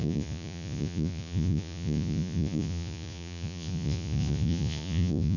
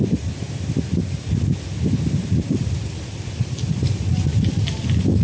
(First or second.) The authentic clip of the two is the second